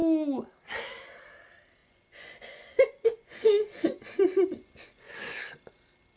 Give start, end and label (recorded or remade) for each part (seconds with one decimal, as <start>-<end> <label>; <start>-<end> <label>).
0.0-1.8 recorded; 1.8-5.5 remade; 5.5-6.2 recorded